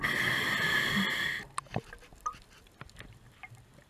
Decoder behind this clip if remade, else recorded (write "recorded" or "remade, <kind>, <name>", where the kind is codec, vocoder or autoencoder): recorded